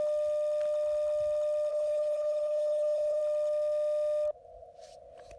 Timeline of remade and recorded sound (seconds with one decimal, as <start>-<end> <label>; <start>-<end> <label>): 0.0-1.7 recorded; 1.7-3.2 remade; 3.2-5.4 recorded